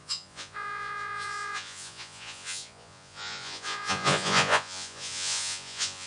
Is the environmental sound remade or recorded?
remade